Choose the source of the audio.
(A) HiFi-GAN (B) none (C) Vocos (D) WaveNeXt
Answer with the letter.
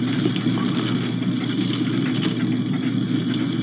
B